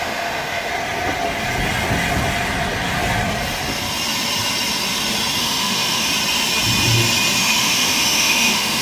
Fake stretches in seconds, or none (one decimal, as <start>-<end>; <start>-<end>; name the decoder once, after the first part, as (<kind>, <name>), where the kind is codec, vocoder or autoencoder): 0.0-0.7 (autoencoder, DAC-VAE); 5.4-6.1; 7.4-8.8